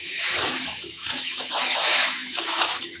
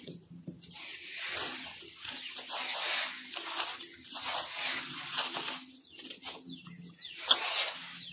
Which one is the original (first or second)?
second